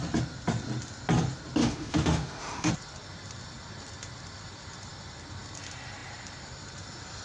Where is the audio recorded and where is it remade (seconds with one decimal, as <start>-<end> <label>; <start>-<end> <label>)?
0.0-1.6 recorded; 1.6-2.7 remade; 2.7-7.2 recorded